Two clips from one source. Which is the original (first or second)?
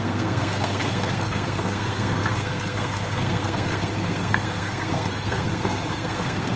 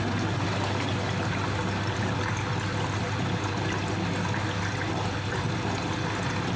second